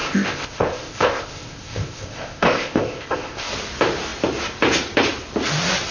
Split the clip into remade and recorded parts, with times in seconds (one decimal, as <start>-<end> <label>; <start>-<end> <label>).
0.0-3.5 remade; 3.5-5.9 recorded